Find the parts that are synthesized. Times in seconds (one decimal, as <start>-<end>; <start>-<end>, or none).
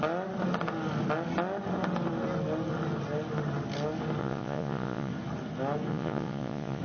4.2-5.1; 5.9-6.8